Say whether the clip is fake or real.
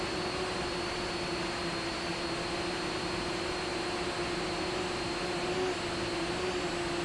real